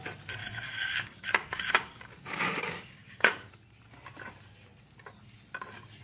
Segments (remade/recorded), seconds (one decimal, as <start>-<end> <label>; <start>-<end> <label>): 0.0-0.4 recorded; 0.4-3.5 remade; 3.5-6.0 recorded